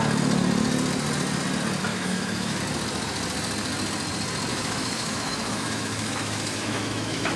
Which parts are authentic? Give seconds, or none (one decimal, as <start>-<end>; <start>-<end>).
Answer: 0.0-1.9; 2.6-4.5